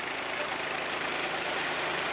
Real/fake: fake